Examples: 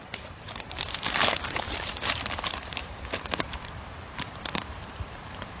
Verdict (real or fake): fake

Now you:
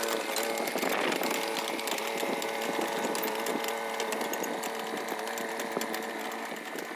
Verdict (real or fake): real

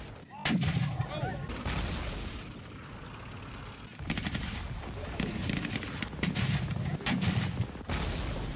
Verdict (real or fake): real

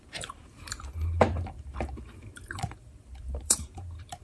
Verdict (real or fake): fake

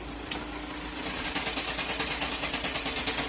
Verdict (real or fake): real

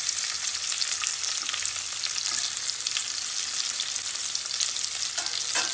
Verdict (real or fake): real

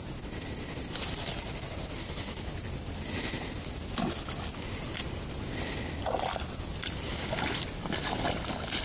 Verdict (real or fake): real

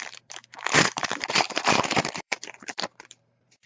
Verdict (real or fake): fake